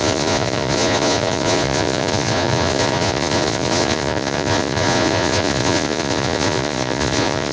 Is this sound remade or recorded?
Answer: remade